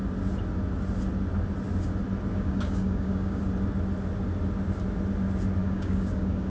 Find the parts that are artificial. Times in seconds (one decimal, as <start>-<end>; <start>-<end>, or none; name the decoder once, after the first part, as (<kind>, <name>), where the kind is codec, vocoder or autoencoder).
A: 2.3-3.4 (codec, DAC); 5.6-6.5